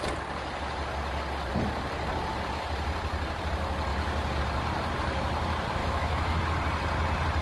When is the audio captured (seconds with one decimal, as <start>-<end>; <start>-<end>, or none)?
0.0-5.8; 6.4-7.4